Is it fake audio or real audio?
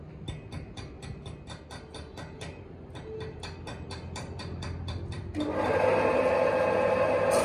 real